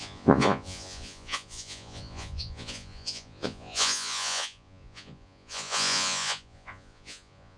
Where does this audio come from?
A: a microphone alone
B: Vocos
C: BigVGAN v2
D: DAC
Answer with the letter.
B